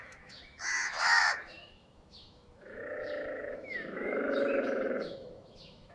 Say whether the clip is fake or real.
fake